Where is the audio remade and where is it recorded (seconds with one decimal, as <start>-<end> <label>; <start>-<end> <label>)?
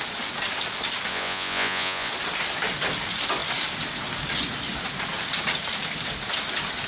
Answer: 0.0-1.1 recorded; 1.1-2.1 remade; 2.1-6.9 recorded